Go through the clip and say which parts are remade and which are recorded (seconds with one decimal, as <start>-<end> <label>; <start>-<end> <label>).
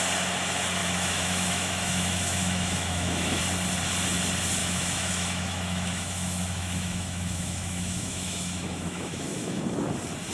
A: 0.0-0.8 recorded; 0.8-3.4 remade; 3.4-4.6 recorded; 4.6-9.6 remade; 9.6-10.3 recorded